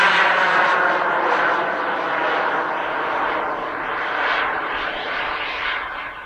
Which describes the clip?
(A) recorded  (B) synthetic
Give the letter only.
A